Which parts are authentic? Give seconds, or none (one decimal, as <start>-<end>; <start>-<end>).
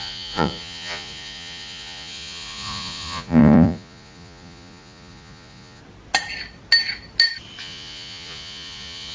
5.8-7.6